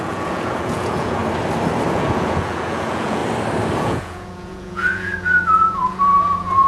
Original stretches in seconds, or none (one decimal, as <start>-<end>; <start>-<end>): 1.2-1.9; 3.2-3.8